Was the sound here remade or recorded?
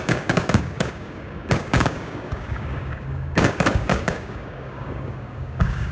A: remade